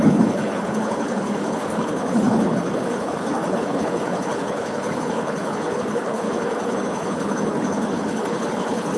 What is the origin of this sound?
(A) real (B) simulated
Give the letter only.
B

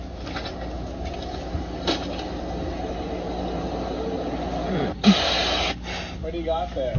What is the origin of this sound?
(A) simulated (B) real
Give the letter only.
B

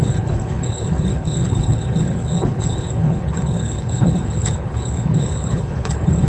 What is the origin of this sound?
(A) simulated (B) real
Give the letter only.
A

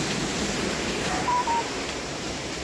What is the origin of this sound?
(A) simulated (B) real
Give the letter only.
A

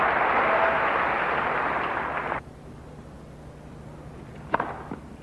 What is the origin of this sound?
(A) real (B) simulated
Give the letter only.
A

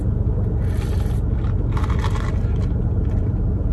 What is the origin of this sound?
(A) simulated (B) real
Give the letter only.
B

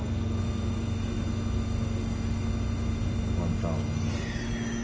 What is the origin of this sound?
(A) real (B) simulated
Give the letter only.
A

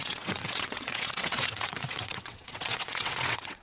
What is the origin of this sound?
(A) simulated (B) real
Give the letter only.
A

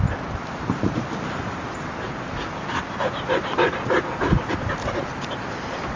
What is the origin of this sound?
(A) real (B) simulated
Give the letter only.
A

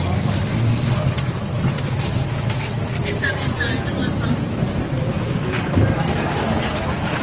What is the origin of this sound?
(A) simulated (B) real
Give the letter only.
B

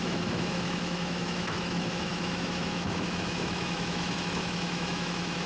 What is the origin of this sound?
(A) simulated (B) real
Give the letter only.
A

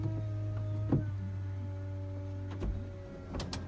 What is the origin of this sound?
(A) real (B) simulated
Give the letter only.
A